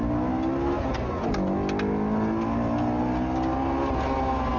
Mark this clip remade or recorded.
recorded